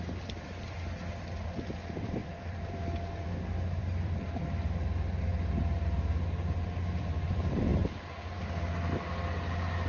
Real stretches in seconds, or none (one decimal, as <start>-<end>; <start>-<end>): 0.0-2.2; 3.3-3.8; 4.4-9.9